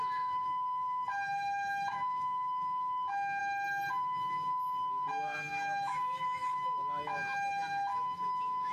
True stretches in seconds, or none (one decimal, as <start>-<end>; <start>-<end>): 3.4-3.9